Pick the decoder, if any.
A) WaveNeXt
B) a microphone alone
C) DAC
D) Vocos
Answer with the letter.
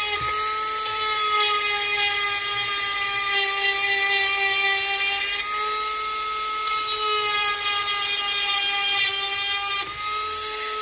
B